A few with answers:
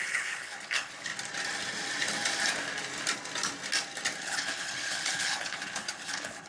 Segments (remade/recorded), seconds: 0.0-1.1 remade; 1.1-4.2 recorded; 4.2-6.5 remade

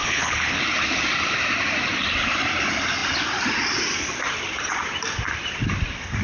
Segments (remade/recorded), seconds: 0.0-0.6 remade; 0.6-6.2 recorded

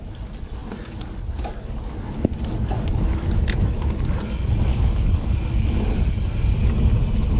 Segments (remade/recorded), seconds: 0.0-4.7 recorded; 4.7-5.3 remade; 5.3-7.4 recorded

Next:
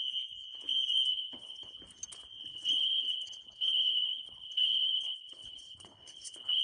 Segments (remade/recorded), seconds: 0.0-1.1 recorded; 1.1-1.8 remade; 1.8-2.4 recorded; 2.4-6.6 remade